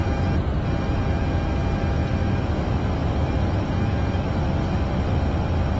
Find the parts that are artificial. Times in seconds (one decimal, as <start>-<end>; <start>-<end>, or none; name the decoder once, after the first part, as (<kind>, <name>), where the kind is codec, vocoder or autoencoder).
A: 2.0-3.3 (vocoder, BigVGAN v2)